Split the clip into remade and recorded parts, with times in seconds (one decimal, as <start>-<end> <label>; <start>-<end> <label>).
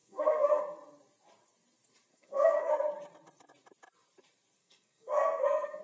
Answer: 0.0-0.6 remade; 0.6-2.1 recorded; 2.1-2.7 remade; 2.7-4.6 recorded; 4.6-5.8 remade